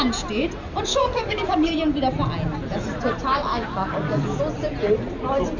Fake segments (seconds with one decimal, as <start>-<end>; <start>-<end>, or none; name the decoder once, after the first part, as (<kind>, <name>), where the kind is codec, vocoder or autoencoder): 0.9-1.7 (codec, DAC); 3.5-4.4